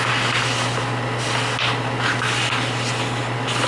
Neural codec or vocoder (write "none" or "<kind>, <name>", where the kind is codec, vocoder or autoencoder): none